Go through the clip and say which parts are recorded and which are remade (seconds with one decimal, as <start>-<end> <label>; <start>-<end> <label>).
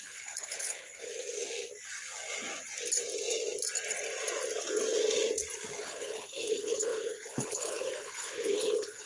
0.0-1.1 remade; 1.1-5.8 recorded; 5.8-9.1 remade